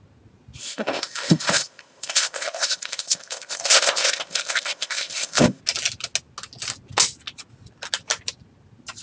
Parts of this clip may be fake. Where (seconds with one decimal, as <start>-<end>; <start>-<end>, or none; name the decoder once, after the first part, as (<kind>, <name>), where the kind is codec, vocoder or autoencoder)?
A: 0.6-5.6 (codec, ZipCodec)